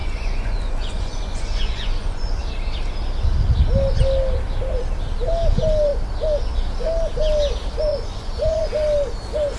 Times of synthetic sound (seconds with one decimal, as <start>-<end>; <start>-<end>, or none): 0.0-2.4; 7.9-8.7